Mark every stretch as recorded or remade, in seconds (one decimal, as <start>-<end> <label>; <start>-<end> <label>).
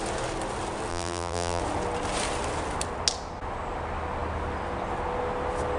0.0-0.9 recorded; 0.9-1.6 remade; 1.6-5.8 recorded